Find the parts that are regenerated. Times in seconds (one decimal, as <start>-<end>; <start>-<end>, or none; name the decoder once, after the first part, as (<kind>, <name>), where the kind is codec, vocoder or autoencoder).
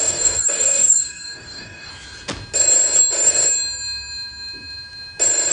0.0-1.9 (codec, DAC)